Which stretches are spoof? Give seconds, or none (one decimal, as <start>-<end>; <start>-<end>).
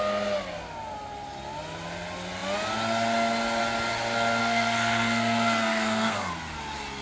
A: 4.4-6.3